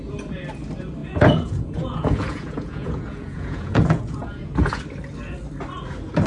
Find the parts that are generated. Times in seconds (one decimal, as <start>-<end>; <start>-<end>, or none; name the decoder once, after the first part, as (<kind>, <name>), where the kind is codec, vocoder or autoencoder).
1.0-4.8 (vocoder, Vocos)